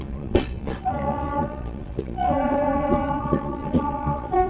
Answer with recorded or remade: remade